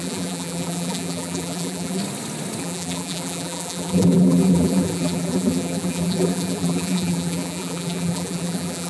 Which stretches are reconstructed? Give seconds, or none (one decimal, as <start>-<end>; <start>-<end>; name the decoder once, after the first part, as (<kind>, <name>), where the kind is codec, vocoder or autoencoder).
0.0-2.0 (vocoder, BigVGAN v2); 2.6-8.9